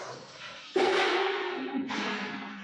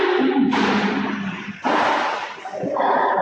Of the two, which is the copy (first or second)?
first